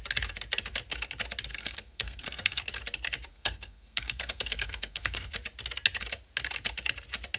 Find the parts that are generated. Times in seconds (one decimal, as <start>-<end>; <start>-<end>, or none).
1.5-2.6; 3.3-5.3

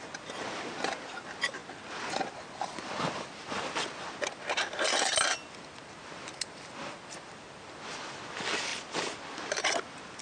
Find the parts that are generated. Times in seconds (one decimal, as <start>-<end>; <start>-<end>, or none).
none

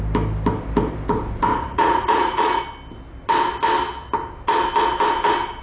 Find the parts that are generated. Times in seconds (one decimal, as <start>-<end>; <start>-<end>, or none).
1.5-2.6

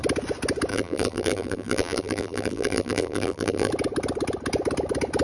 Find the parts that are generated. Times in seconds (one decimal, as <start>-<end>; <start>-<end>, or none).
0.7-3.7

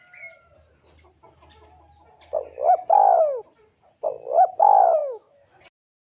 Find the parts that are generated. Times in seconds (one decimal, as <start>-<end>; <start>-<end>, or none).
5.0-5.6

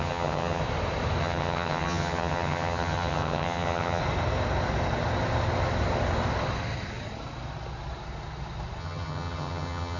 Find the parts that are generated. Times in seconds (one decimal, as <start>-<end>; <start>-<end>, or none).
0.0-0.6; 1.2-4.0; 8.8-10.0

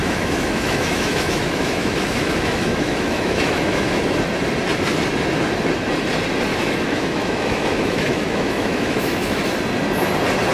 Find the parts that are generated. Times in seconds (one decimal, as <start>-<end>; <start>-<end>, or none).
0.0-4.0; 6.5-9.6